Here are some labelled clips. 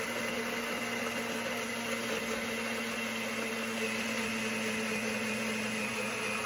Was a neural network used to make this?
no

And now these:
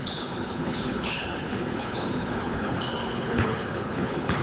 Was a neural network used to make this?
yes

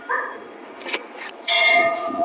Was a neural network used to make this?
yes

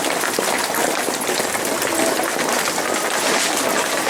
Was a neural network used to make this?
no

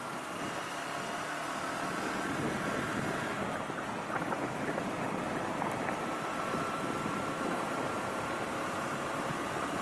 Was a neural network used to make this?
yes